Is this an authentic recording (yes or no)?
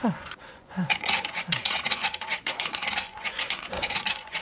no